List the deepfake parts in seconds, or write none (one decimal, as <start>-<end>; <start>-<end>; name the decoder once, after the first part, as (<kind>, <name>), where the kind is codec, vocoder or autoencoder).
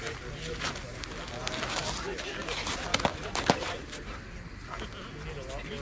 3.1-4.2 (vocoder, BigVGAN v2)